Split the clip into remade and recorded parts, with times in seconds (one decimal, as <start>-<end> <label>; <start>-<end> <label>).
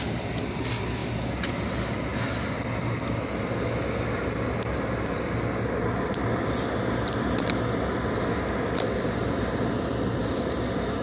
0.0-11.0 recorded